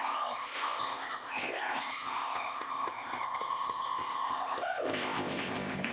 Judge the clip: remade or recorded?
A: remade